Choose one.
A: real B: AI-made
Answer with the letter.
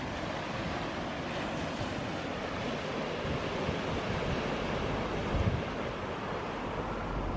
A